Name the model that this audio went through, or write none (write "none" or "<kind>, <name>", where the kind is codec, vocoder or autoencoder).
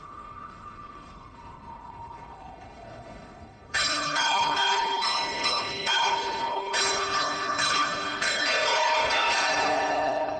codec, HILCodec